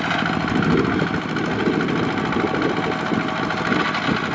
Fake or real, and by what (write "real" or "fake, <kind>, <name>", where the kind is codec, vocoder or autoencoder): real